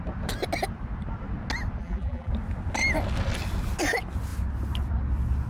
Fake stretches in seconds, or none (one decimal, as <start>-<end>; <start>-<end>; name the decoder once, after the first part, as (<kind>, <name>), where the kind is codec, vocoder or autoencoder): 1.8-2.3 (vocoder, BigVGAN v2)